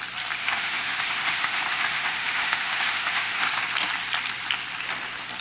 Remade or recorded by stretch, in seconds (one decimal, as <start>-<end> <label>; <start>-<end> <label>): 0.0-0.4 recorded; 0.4-3.6 remade; 3.6-5.4 recorded